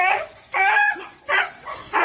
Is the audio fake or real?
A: fake